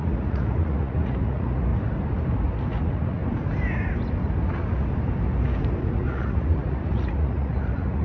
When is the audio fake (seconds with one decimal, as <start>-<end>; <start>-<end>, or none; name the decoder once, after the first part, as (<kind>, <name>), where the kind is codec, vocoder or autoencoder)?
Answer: 0.0-1.7 (vocoder, Vocos); 2.8-3.2; 5.8-8.0